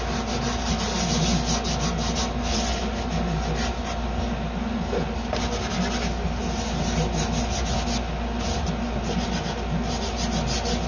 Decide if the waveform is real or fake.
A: real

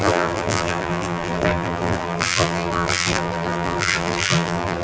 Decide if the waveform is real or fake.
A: fake